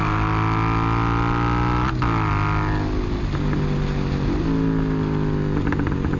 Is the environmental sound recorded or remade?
recorded